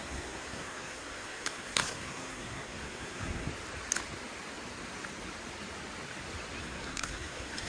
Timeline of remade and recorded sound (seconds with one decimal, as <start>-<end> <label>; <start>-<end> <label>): 0.0-3.5 remade; 3.5-6.6 recorded; 6.6-7.7 remade